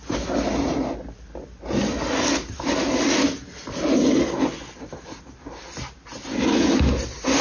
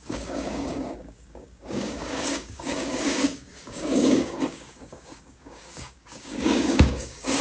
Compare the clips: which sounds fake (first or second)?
second